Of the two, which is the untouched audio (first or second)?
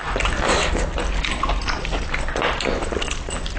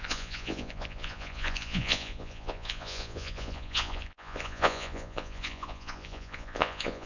first